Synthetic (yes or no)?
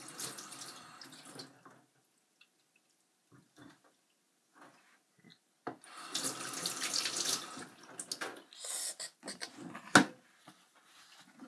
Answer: no